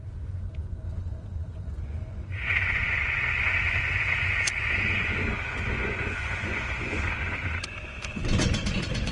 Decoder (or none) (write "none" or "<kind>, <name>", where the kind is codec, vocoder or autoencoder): vocoder, Vocos